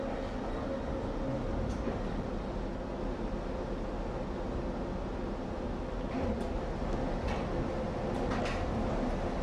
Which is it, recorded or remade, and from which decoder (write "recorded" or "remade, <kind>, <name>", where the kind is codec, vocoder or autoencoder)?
recorded